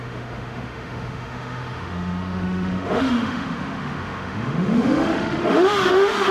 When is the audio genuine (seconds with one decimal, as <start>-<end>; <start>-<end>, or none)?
none